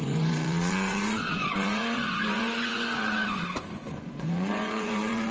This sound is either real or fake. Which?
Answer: fake